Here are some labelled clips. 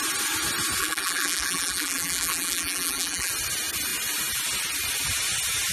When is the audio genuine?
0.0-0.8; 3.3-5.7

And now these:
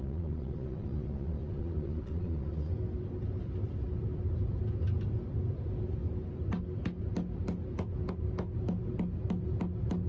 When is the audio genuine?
2.7-10.1

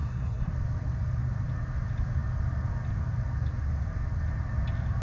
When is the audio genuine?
0.5-5.0

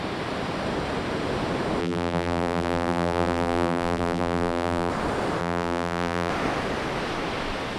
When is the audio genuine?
0.0-1.8; 4.9-5.4; 6.3-7.8

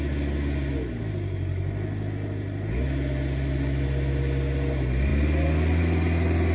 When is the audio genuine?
0.0-6.5

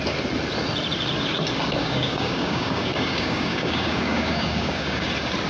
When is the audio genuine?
0.0-1.8; 5.1-5.5

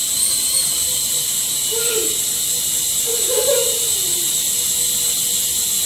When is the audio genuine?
1.9-3.1; 4.6-5.8

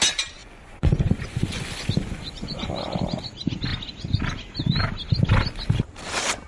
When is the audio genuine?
0.0-0.4; 2.7-6.5